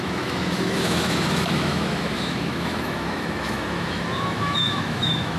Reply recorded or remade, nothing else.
remade